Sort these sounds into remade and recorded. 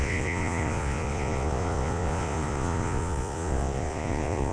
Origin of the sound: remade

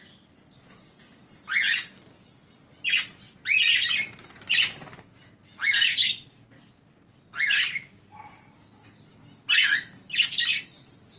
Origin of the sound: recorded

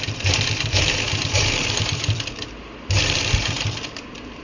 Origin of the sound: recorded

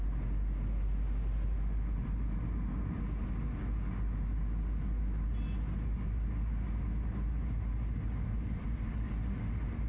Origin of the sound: recorded